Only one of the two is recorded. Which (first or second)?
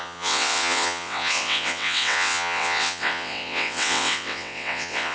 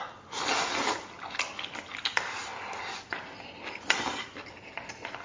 second